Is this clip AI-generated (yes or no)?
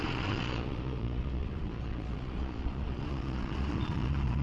yes